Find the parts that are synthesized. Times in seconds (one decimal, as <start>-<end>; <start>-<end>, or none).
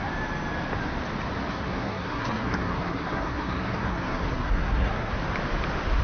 1.5-5.1